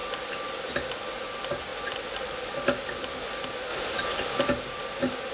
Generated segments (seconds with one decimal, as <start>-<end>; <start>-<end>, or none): 0.0-0.7